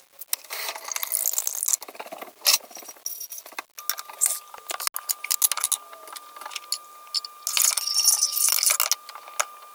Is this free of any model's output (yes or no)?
yes